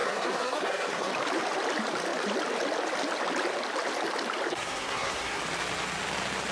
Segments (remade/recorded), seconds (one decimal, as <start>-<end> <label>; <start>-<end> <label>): 0.0-1.1 remade; 1.1-4.5 recorded; 4.5-5.4 remade; 5.4-6.5 recorded